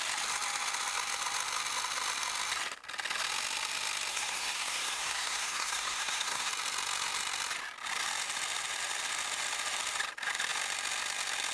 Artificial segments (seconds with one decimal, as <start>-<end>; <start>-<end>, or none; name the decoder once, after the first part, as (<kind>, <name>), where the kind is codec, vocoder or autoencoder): 4.1-6.5 (codec, SNAC)